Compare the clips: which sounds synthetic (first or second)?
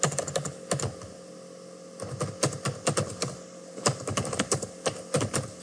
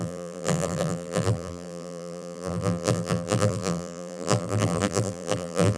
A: second